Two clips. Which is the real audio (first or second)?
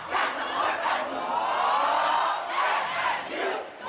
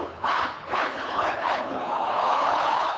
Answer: first